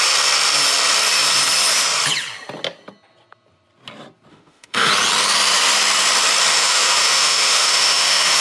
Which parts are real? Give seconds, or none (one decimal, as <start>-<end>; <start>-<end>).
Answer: 0.0-4.3; 4.9-6.5